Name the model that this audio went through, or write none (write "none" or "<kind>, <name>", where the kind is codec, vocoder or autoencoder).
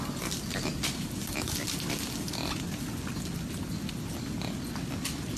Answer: none